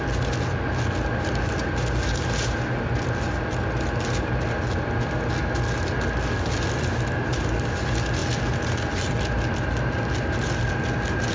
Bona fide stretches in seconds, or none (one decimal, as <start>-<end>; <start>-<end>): 0.0-11.3